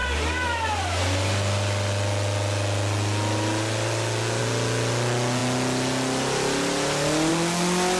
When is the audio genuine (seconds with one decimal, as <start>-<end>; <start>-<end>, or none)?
0.0-8.0